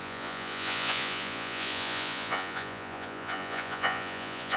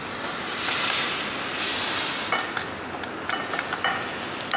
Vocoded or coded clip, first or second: first